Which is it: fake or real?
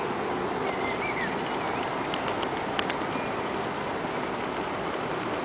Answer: real